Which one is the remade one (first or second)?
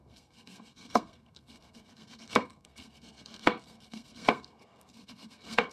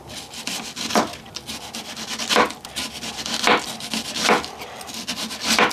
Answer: first